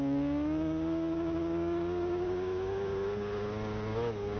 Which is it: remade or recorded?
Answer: remade